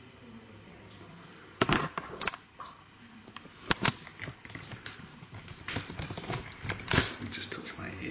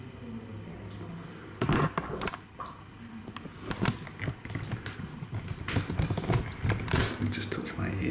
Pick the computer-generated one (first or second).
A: first